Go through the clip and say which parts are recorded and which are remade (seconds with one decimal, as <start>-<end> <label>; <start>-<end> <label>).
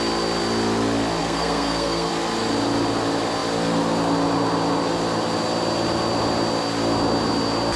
0.0-1.2 recorded; 1.2-2.1 remade; 2.1-7.8 recorded